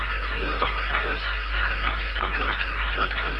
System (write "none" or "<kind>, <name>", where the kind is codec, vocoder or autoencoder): codec, SNAC